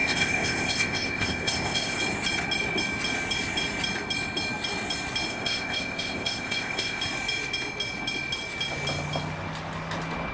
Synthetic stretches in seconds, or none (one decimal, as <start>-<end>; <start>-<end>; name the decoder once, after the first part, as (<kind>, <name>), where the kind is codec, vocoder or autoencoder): 0.0-2.0 (codec, ZipCodec); 5.3-7.0